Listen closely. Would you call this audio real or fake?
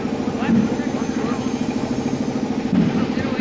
real